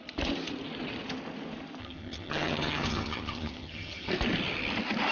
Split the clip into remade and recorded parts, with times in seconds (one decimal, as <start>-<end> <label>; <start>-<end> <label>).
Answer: 0.0-1.8 recorded; 1.8-4.1 remade; 4.1-5.1 recorded